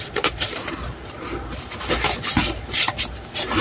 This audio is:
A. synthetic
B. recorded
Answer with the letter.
A